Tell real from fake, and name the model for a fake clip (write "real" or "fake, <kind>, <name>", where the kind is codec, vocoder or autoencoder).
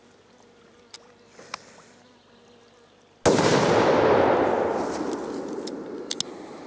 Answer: real